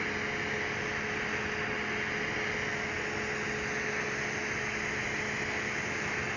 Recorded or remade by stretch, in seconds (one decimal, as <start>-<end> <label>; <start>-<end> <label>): 0.0-6.4 recorded